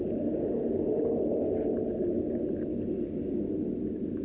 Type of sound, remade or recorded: recorded